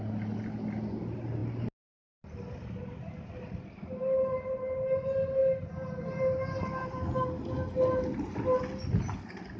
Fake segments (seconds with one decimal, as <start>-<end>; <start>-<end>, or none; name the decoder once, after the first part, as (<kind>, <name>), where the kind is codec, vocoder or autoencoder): none